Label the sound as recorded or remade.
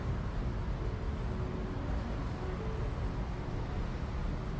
recorded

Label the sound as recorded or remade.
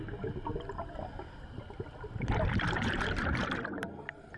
recorded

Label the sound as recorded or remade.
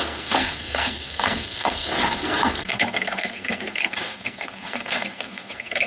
remade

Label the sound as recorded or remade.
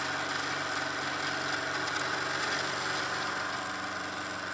recorded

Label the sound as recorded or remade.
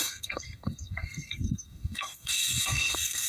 remade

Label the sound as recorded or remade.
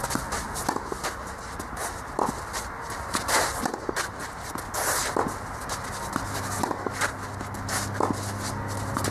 recorded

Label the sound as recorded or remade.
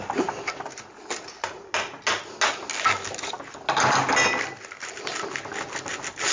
recorded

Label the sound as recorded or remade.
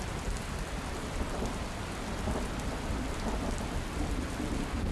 recorded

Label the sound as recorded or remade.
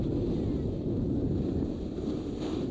recorded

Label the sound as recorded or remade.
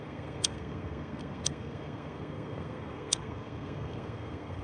remade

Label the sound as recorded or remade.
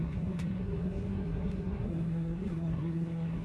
remade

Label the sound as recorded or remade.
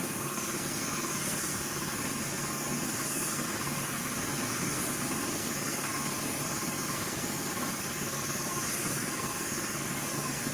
remade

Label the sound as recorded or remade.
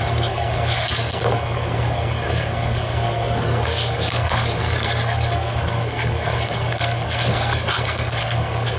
remade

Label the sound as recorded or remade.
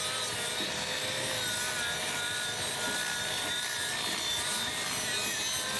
recorded